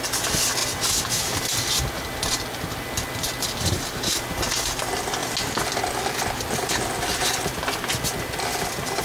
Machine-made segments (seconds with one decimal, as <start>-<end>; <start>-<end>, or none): none